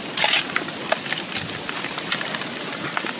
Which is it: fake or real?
real